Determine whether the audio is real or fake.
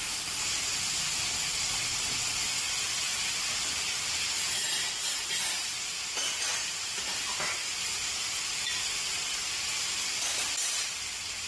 real